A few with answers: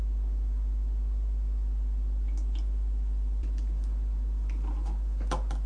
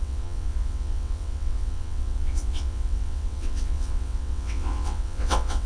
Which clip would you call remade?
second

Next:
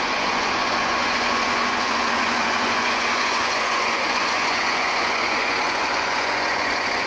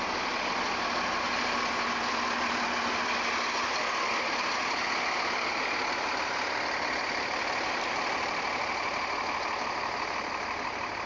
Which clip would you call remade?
first